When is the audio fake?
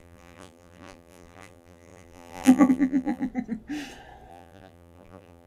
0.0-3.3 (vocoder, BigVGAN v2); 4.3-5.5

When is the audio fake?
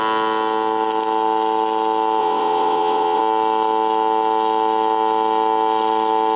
2.2-3.2 (vocoder, WaveNeXt)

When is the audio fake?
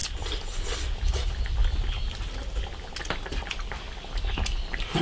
none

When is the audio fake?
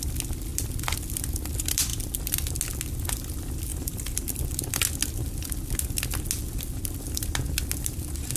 3.7-4.5 (vocoder, BigVGAN v2)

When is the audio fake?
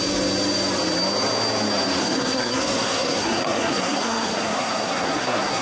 2.0-5.6 (codec, SNAC)